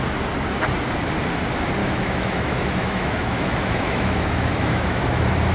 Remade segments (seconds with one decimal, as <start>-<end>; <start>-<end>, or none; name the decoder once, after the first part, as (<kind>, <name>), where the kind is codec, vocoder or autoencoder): 1.8-5.1 (autoencoder, DAC-VAE)